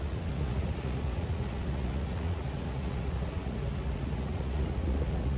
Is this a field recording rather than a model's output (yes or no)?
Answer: no